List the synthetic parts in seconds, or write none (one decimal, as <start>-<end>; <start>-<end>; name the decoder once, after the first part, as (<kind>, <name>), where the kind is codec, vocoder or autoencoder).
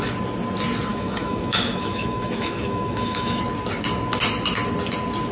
0.9-3.4 (autoencoder, DAC-VAE)